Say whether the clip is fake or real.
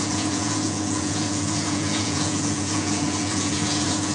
fake